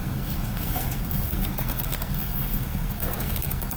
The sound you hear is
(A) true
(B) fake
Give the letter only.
B